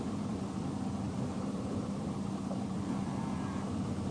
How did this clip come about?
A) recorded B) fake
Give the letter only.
B